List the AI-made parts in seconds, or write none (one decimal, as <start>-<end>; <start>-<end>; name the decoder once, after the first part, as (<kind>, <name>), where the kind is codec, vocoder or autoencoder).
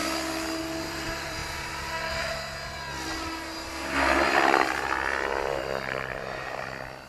0.6-1.4 (vocoder, BigVGAN v2); 5.6-7.1